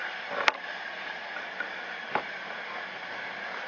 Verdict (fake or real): real